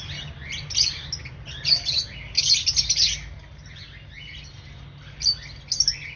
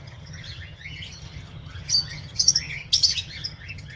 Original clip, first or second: first